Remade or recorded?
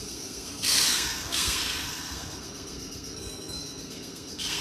remade